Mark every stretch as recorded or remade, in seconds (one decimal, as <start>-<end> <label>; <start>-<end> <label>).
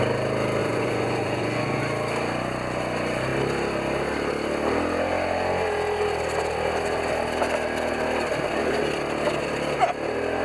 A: 0.0-0.6 recorded; 0.6-1.8 remade; 1.8-10.4 recorded